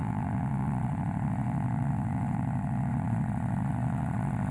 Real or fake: fake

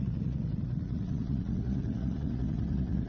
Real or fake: fake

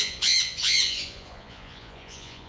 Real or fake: fake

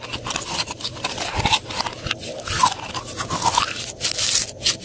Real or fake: real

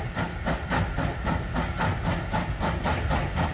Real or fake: real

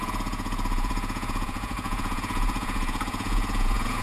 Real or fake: fake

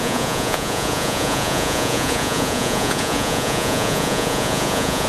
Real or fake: fake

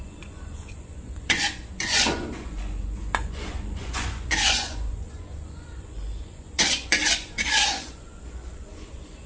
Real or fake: fake